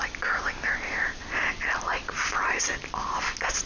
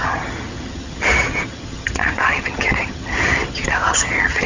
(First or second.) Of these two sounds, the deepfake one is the second